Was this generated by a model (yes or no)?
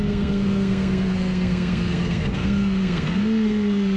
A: yes